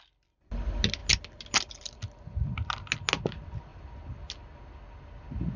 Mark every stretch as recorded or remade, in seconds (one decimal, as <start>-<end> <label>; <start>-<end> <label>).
0.0-5.6 recorded